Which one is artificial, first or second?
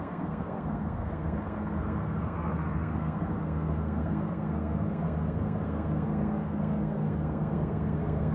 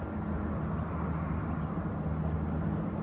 first